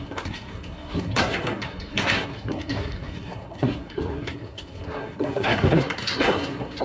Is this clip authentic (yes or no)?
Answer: no